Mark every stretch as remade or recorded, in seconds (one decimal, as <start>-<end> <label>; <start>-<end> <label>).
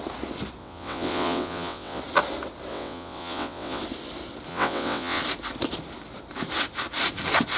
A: 0.0-0.6 recorded; 0.6-2.0 remade; 2.0-2.7 recorded; 2.7-3.8 remade; 3.8-4.5 recorded; 4.5-5.2 remade; 5.2-7.6 recorded